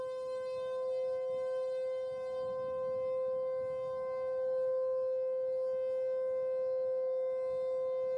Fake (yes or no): no